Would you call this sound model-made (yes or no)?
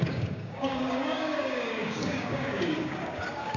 yes